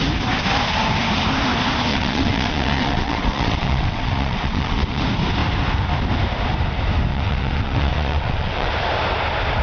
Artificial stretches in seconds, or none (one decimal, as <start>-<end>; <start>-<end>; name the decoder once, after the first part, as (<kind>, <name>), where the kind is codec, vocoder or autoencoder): 1.9-5.0 (vocoder, WaveNeXt); 7.1-8.7